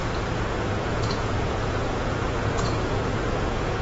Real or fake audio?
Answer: fake